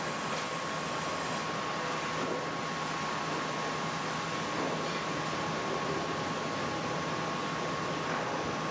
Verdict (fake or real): real